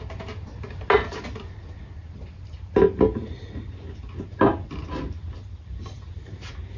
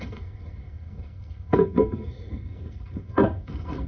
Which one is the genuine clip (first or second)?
first